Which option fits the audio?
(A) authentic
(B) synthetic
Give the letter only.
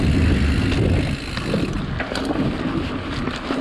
A